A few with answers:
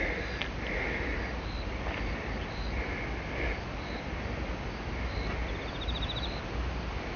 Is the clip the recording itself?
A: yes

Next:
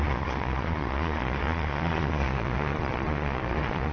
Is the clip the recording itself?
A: no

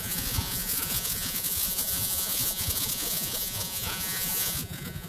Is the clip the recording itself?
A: no